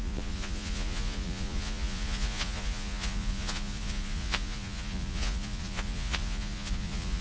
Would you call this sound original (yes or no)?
no